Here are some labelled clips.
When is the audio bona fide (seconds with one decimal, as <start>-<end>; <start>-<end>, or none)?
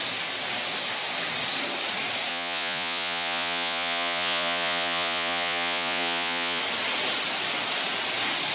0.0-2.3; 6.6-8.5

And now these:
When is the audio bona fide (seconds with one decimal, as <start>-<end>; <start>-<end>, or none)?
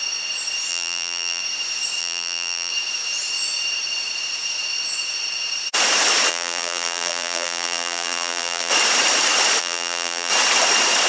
0.0-0.7; 1.4-2.0; 2.7-6.3; 8.7-9.6; 10.3-11.1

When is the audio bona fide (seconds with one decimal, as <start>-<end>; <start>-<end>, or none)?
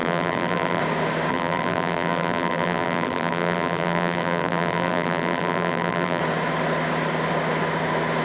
0.8-1.3; 6.2-8.2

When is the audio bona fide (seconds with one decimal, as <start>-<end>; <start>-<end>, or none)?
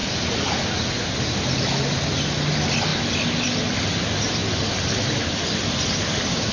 0.0-6.5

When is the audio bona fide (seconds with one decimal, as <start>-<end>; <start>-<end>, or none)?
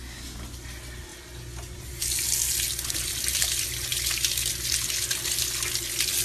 0.0-6.2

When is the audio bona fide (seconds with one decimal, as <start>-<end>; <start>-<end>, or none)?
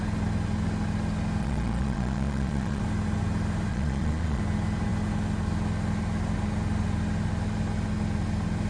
0.0-1.4; 2.8-3.7; 4.4-8.7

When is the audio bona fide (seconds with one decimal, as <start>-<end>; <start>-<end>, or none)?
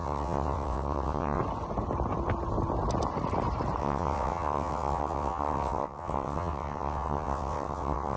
1.4-3.8